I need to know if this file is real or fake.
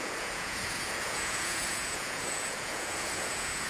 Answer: fake